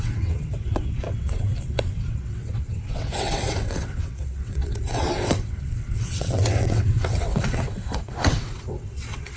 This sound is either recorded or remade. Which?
remade